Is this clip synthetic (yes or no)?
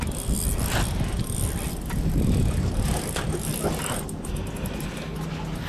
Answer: no